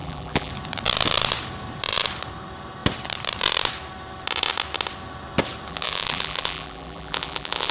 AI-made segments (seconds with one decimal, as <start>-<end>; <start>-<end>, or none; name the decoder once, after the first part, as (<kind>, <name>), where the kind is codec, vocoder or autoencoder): 0.0-0.5 (vocoder, BigVGAN v2); 5.7-7.7